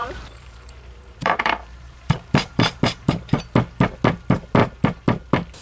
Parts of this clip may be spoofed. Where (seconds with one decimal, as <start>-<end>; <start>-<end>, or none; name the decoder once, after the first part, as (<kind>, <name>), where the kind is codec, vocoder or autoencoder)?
0.0-3.4 (vocoder, BigVGAN v2)